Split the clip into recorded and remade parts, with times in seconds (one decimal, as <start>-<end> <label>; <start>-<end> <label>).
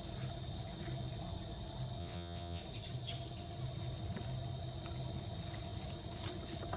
0.0-2.0 recorded; 2.0-2.6 remade; 2.6-6.8 recorded